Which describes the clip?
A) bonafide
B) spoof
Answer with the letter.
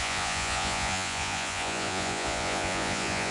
B